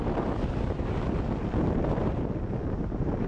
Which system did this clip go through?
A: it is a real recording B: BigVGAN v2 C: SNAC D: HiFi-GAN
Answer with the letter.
A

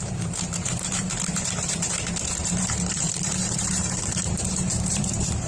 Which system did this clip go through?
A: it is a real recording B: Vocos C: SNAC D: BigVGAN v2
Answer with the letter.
D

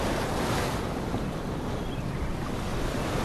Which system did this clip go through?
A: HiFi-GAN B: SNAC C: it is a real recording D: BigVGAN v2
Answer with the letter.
D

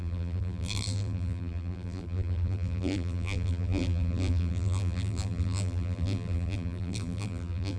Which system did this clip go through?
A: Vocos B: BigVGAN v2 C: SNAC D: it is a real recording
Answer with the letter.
B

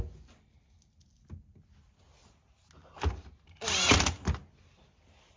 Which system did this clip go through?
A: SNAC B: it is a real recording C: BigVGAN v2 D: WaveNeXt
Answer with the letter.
B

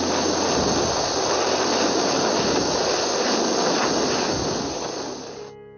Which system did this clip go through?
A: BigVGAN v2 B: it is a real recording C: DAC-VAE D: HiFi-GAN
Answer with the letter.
B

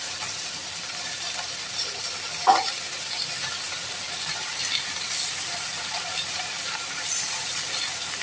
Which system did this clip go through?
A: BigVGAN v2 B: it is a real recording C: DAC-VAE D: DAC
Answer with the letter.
A